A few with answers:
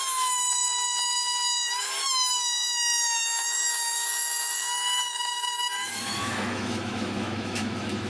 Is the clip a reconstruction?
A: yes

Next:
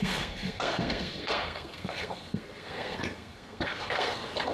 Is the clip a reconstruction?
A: yes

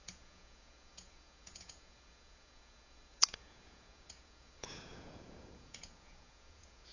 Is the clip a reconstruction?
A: yes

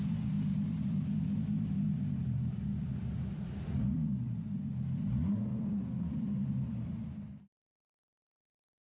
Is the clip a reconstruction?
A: yes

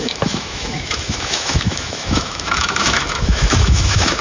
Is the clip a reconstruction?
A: yes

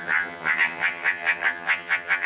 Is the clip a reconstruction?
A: yes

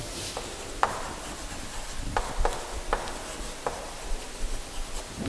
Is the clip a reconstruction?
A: no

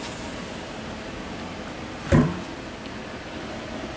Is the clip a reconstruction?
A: no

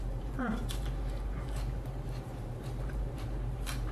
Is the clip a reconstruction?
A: yes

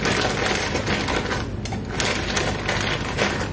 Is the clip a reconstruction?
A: no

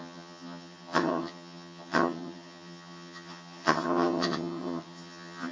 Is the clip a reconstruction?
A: yes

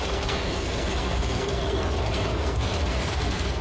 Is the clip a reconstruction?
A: yes